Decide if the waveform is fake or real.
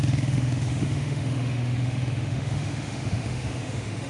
fake